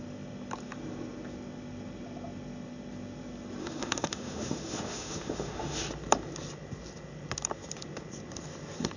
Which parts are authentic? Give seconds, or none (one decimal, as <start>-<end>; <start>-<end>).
0.0-3.6; 5.8-9.0